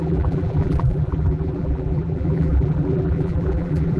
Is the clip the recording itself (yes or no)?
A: no